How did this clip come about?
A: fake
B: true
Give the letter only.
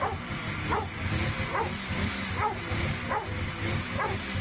B